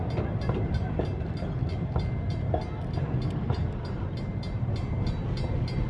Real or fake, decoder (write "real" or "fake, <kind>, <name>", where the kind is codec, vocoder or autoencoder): real